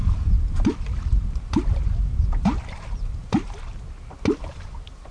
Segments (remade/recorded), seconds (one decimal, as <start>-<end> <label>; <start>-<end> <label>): 0.0-5.1 recorded